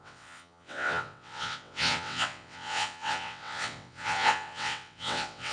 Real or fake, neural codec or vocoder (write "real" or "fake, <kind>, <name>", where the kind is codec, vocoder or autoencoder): fake, vocoder, WaveNeXt